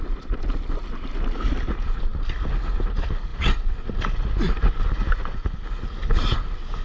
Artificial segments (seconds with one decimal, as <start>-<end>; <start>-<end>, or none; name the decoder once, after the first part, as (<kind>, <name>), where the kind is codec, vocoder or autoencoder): none